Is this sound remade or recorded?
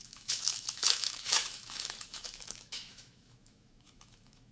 remade